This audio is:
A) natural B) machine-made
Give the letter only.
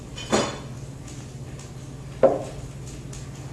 A